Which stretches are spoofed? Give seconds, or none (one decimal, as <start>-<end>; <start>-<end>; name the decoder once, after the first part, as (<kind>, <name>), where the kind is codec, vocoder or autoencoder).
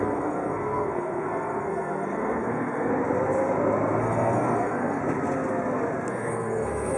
0.0-2.9 (codec, SNAC); 4.0-5.0; 6.1-7.0